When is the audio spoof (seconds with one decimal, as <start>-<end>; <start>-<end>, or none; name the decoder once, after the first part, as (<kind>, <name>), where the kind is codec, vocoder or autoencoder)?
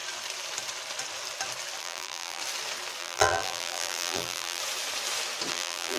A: 1.8-2.4 (vocoder, BigVGAN v2); 3.0-4.6; 5.5-6.0